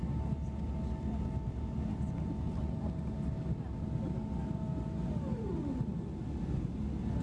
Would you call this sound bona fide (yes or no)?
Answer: yes